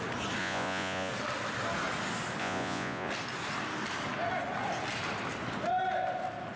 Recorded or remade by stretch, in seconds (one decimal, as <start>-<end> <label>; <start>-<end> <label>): 0.0-0.4 recorded; 0.4-1.1 remade; 1.1-2.4 recorded; 2.4-3.1 remade; 3.1-6.6 recorded